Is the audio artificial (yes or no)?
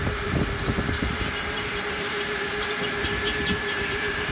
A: yes